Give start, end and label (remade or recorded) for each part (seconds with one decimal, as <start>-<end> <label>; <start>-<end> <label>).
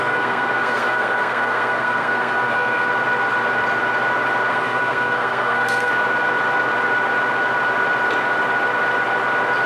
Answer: 0.0-2.9 remade; 2.9-4.5 recorded; 4.5-5.9 remade; 5.9-9.7 recorded